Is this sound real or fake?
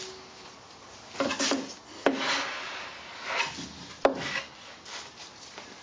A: real